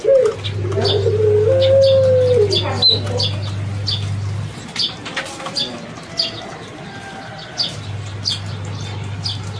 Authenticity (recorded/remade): recorded